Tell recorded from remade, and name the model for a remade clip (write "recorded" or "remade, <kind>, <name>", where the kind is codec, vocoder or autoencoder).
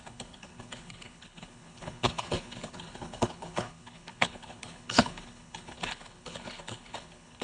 remade, codec, HILCodec